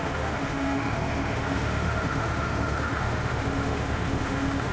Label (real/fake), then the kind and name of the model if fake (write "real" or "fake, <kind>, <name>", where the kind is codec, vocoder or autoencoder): fake, autoencoder, DAC-VAE